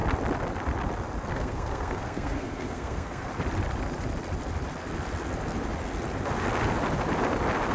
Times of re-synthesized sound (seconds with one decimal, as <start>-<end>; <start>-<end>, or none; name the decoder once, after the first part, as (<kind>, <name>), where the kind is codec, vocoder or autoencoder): 1.3-3.3 (codec, SNAC)